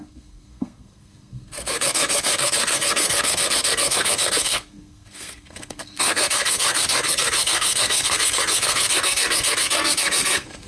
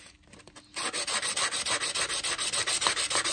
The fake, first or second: first